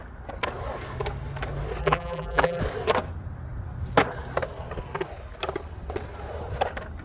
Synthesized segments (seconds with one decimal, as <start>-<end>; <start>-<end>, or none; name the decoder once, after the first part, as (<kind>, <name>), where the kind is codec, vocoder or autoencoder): 1.8-2.6 (vocoder, BigVGAN v2)